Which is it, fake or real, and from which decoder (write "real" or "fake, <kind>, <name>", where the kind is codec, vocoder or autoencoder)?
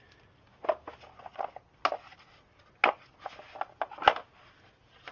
real